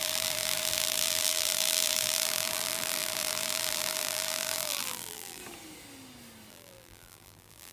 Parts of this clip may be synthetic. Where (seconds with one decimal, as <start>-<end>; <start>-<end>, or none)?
0.0-5.4; 6.5-7.7